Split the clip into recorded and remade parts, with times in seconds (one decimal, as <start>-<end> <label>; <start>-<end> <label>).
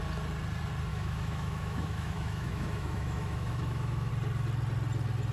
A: 0.0-0.9 recorded; 0.9-4.1 remade; 4.1-5.3 recorded